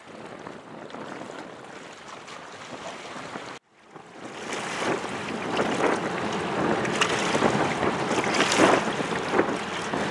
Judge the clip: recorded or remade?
recorded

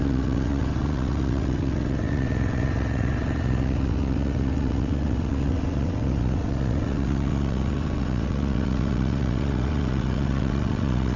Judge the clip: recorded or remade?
remade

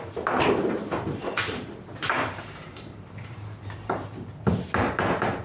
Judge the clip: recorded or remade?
remade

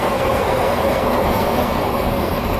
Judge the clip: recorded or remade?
remade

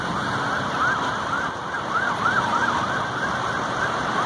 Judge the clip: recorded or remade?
recorded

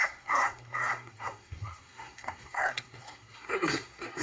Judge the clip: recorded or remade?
remade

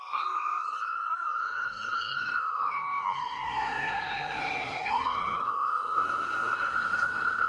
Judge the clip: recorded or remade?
remade